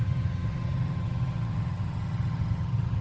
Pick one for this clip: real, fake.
fake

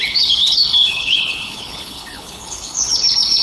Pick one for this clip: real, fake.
fake